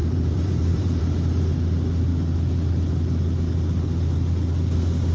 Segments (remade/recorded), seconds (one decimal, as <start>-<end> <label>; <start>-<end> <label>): 0.0-1.0 remade; 1.0-5.1 recorded